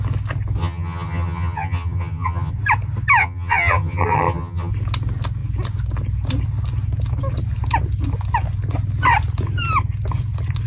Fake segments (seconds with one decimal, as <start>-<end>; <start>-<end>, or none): 0.6-2.5; 3.2-4.7